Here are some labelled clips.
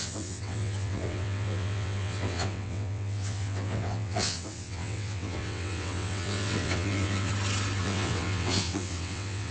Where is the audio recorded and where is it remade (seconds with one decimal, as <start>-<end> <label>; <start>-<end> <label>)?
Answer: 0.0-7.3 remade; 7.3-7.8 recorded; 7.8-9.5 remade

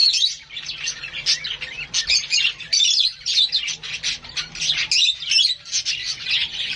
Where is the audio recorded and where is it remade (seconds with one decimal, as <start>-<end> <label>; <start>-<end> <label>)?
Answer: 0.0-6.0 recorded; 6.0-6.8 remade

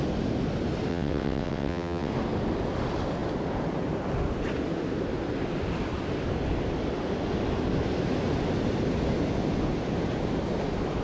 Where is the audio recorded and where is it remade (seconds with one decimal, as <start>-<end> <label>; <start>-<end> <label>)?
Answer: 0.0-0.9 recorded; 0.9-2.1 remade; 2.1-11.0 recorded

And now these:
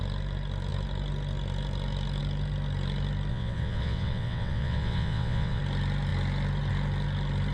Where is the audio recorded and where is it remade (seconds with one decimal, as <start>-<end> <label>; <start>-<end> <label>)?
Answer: 0.0-3.3 recorded; 3.3-5.6 remade; 5.6-7.5 recorded